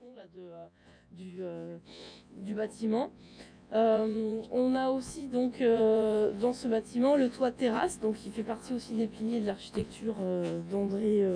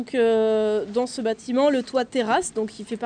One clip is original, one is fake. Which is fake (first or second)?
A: first